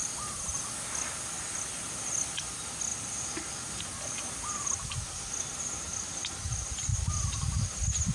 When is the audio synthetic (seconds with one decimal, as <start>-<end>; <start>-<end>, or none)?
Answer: 0.0-0.6